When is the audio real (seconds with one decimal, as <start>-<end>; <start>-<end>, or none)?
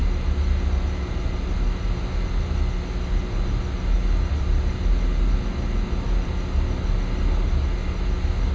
0.0-8.5